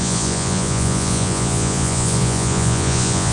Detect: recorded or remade remade